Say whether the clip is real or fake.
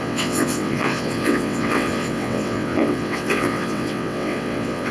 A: fake